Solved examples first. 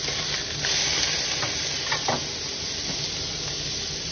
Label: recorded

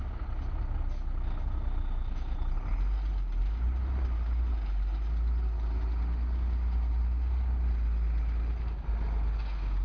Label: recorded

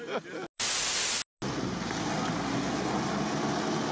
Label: recorded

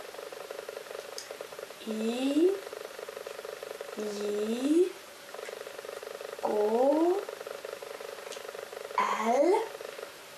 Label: recorded